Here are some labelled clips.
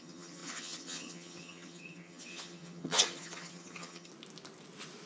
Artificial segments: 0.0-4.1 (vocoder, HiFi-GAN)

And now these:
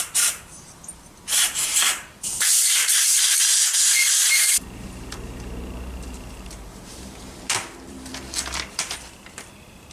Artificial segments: 0.0-8.1 (vocoder, BigVGAN v2); 8.7-9.9

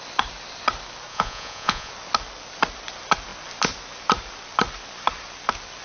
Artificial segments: 1.1-1.9 (vocoder, Vocos)

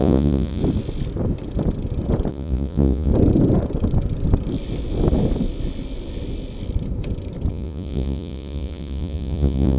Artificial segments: 0.0-0.6 (vocoder, Vocos); 2.3-3.1; 7.5-9.8